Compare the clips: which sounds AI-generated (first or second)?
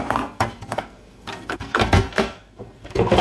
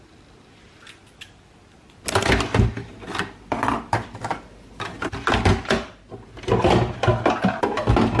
first